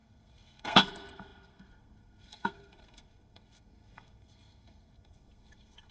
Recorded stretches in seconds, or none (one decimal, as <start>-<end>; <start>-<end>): none